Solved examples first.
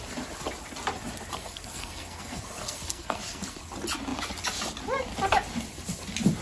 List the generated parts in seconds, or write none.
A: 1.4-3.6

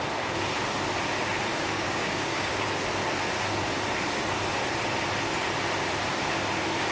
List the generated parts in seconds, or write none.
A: 1.5-2.7

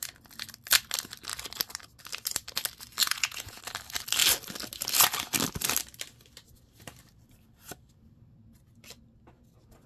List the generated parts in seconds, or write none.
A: 3.0-3.6